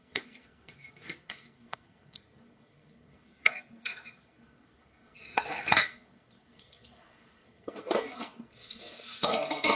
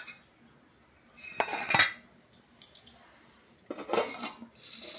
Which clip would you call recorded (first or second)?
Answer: second